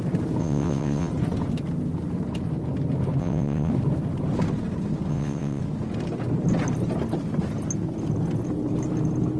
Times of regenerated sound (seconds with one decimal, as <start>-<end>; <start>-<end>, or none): 0.4-1.1; 3.2-3.7; 5.1-5.6